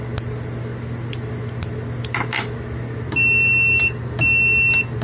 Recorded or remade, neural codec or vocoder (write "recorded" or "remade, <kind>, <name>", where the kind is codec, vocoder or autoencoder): recorded